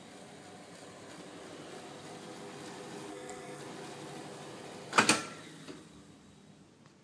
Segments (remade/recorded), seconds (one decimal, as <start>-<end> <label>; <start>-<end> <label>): 0.0-3.1 recorded; 3.1-3.6 remade; 3.6-7.0 recorded